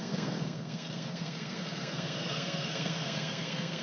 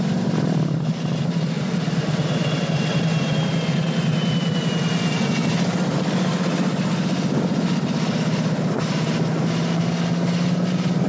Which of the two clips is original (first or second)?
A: second